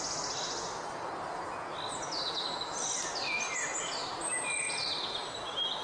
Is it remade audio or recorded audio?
recorded